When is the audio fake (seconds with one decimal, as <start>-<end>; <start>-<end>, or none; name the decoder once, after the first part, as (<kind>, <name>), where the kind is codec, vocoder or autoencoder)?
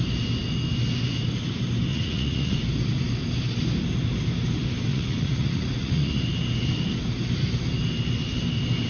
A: 1.9-2.6 (vocoder, Vocos); 4.9-6.2